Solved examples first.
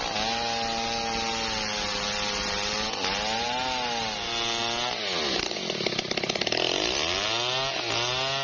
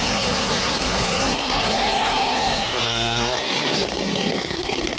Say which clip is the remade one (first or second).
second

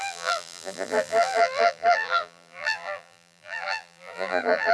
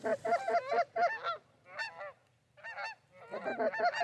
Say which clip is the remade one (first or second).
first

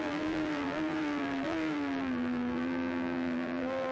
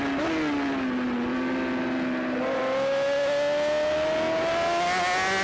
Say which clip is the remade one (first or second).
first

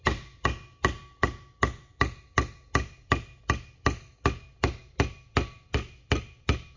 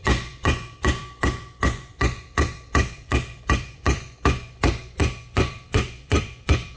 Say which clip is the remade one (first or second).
second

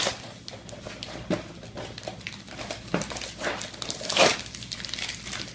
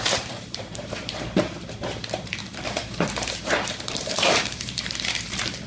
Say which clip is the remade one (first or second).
second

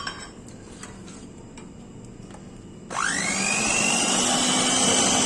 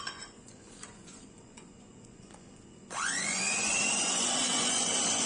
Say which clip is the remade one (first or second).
second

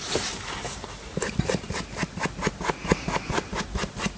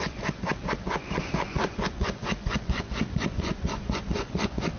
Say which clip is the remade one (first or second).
second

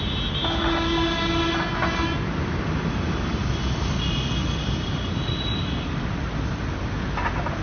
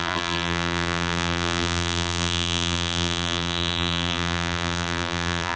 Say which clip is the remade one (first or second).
second